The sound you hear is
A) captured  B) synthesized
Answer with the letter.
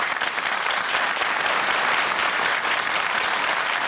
B